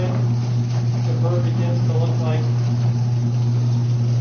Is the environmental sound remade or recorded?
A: recorded